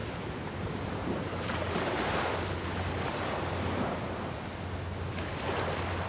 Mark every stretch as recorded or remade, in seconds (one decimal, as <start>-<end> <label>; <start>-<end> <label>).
0.0-2.0 remade; 2.0-6.1 recorded

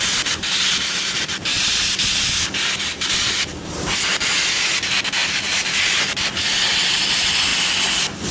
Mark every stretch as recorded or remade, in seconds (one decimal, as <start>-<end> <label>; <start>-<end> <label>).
0.0-8.3 recorded